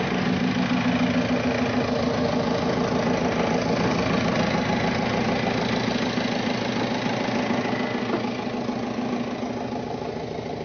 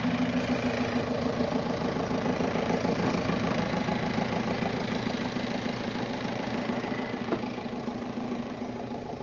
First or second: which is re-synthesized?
second